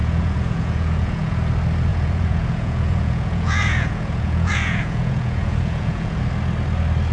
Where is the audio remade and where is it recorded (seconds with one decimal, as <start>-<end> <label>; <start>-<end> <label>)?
0.0-1.5 remade; 1.5-1.9 recorded; 1.9-6.2 remade; 6.2-7.1 recorded